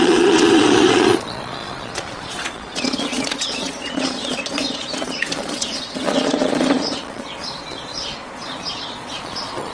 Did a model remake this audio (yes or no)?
yes